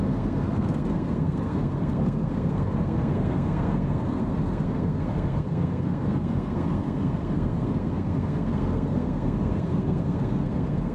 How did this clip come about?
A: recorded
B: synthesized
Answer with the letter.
B